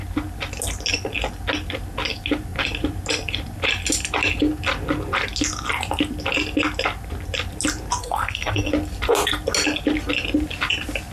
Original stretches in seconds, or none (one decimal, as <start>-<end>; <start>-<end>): 0.0-8.0; 8.7-11.1